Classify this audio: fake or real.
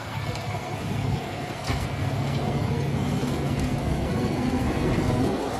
fake